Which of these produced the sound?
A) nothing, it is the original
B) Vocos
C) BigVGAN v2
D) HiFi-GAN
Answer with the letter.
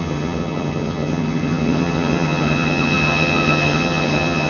D